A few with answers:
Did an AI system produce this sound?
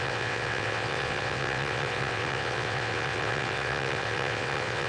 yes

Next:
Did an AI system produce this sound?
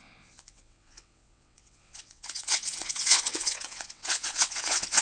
yes